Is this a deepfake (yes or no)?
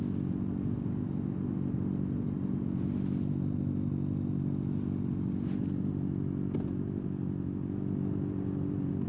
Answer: no